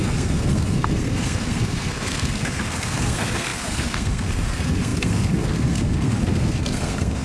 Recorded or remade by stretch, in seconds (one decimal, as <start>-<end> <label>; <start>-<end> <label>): 0.0-7.2 remade